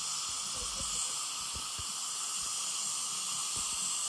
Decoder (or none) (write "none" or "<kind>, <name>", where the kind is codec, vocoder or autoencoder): none